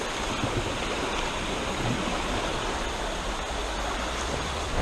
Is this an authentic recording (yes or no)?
yes